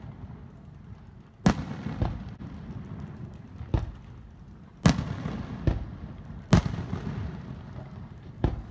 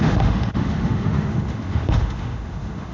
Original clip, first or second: first